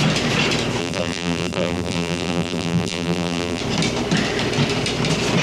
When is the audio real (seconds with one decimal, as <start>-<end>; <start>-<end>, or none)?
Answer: 0.0-0.8; 3.6-5.4